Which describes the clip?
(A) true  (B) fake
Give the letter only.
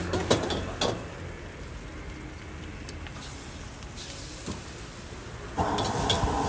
A